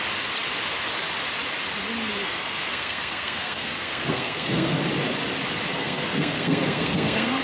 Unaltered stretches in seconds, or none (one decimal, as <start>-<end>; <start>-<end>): 0.0-2.2; 4.8-5.7